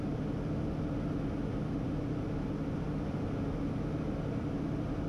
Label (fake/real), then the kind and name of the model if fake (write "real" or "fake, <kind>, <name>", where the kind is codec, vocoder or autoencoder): real